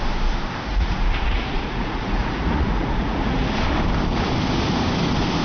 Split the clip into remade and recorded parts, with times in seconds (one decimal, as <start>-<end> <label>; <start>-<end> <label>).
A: 0.0-0.7 recorded; 0.7-3.5 remade; 3.5-5.4 recorded